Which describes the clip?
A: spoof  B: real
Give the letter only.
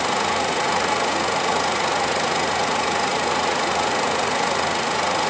A